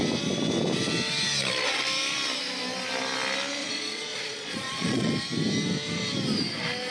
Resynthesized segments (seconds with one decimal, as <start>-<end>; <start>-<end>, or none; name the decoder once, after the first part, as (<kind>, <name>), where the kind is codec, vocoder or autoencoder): 3.6-5.1 (vocoder, Vocos)